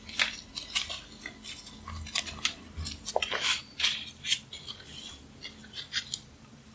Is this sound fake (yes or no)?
no